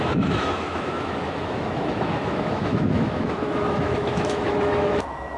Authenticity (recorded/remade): remade